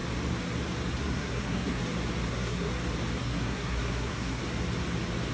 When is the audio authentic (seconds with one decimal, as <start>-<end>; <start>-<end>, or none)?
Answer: 0.0-1.0; 1.8-2.3; 2.7-3.2; 4.4-5.3